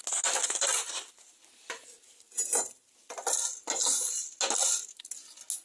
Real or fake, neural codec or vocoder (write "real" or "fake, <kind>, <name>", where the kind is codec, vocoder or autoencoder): real